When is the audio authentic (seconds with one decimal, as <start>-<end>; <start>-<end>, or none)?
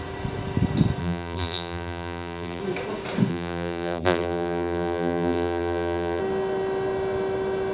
0.0-1.0; 2.6-3.3; 6.2-7.7